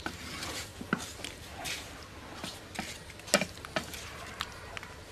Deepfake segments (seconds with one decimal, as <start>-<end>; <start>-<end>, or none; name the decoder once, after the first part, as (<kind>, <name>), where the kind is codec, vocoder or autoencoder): 0.0-0.7 (vocoder, BigVGAN v2); 3.8-5.1